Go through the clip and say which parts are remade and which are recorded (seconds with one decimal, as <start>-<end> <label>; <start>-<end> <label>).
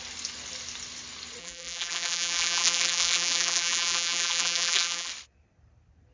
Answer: 0.0-1.4 recorded; 1.4-5.1 remade; 5.1-6.1 recorded